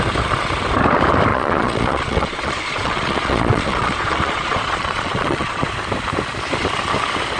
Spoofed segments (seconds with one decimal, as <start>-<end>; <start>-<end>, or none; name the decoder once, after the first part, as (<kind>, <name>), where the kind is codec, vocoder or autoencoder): 1.3-5.7 (vocoder, Vocos)